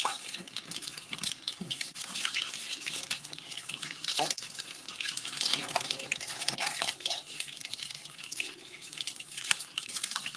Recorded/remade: remade